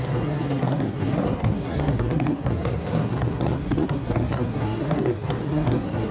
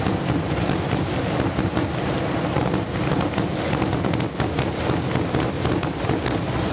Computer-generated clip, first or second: first